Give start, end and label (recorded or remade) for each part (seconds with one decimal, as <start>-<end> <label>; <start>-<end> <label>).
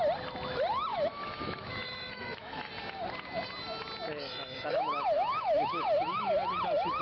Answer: 0.0-0.9 recorded; 0.9-2.7 remade; 2.7-4.1 recorded; 4.1-6.3 remade; 6.3-7.0 recorded